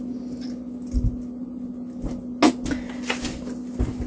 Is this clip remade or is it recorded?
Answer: recorded